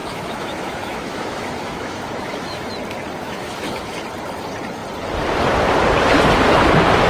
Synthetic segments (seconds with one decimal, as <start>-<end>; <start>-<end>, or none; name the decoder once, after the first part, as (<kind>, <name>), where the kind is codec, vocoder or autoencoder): 0.0-2.7 (autoencoder, DAC-VAE); 3.2-3.9